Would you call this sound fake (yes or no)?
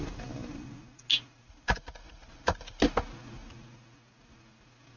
no